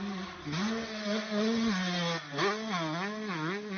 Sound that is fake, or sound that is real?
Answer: real